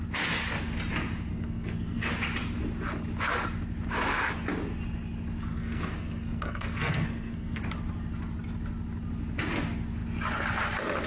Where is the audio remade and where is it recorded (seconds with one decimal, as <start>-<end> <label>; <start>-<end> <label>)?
0.0-1.3 recorded; 1.3-2.1 remade; 2.1-5.5 recorded; 5.5-7.6 remade; 7.6-11.1 recorded